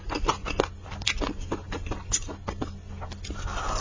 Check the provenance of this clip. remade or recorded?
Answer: recorded